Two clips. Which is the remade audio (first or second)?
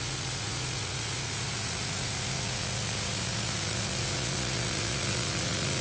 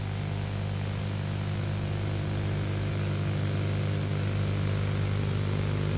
first